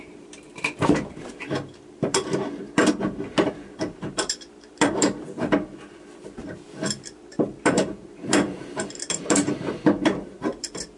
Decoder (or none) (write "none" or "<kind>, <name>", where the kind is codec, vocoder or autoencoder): vocoder, BigVGAN v2